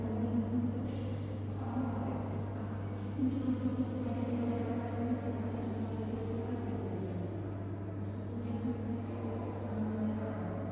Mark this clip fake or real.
real